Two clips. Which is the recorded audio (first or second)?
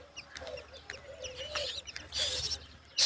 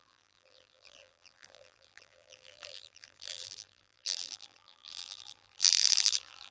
first